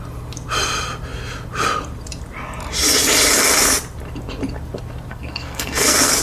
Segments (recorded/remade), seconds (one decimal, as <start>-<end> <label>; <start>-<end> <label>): 0.0-5.1 recorded; 5.1-6.2 remade